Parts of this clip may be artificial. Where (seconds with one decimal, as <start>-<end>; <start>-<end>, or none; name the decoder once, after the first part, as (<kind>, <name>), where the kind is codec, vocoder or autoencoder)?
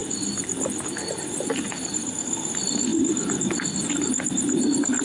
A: none